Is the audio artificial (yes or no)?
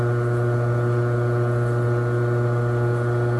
no